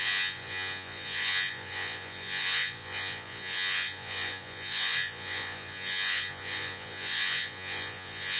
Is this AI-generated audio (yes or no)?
yes